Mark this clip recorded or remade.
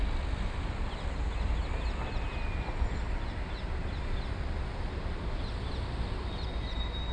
recorded